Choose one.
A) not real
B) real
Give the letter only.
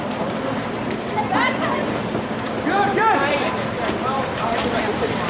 A